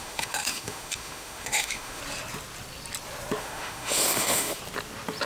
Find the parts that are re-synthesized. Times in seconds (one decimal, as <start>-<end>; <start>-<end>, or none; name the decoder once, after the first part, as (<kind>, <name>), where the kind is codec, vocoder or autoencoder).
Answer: 0.0-2.0 (autoencoder, DAC-VAE); 3.4-4.6